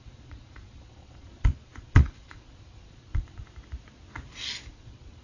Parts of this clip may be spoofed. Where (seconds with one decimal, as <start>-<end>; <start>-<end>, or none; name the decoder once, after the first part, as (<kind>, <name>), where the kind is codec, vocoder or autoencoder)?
0.0-3.4 (vocoder, Vocos); 4.7-5.2

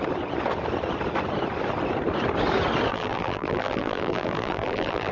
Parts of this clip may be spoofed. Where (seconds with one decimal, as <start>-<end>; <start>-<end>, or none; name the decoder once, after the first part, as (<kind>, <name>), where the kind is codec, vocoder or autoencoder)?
2.9-5.1 (vocoder, BigVGAN v2)

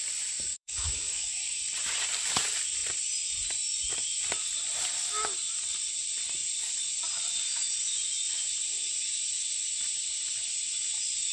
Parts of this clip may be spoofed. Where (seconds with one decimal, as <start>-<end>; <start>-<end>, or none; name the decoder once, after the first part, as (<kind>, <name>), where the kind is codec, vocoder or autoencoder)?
0.5-1.6 (codec, DAC)

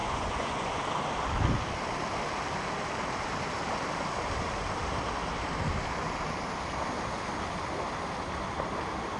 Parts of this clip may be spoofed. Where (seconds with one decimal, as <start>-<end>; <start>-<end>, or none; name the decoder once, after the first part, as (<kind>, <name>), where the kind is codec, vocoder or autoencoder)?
0.0-0.8 (vocoder, Vocos)

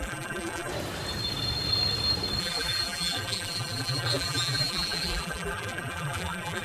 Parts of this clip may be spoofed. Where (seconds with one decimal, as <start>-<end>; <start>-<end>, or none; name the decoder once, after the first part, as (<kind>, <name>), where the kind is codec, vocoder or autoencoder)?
0.0-0.7 (vocoder, BigVGAN v2); 2.4-6.6

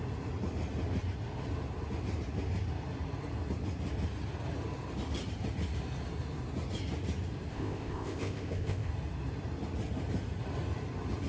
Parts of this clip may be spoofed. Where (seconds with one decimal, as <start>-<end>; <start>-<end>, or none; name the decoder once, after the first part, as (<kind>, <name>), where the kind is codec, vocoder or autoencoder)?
7.5-8.9 (codec, ZipCodec)

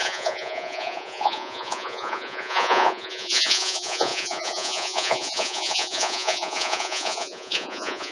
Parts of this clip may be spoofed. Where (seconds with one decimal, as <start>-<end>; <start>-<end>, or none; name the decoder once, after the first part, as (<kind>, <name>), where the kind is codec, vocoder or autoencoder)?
0.0-8.1 (vocoder, Vocos)

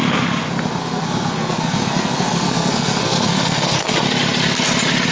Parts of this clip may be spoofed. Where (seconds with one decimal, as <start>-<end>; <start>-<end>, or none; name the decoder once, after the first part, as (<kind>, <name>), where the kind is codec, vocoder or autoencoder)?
0.8-3.9 (codec, SNAC)